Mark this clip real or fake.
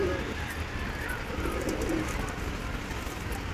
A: real